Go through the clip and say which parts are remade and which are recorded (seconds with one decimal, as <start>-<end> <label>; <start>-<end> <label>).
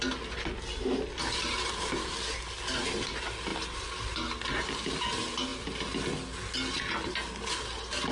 0.0-8.1 recorded